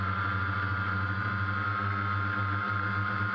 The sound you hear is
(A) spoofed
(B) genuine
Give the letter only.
B